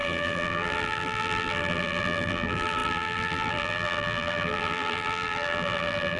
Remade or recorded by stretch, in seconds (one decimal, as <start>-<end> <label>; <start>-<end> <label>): 0.0-6.2 remade